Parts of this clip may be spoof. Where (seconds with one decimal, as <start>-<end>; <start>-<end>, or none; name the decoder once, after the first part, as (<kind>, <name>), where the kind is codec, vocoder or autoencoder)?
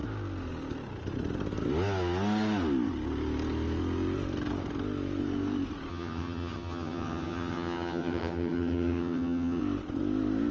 5.9-9.6 (vocoder, HiFi-GAN)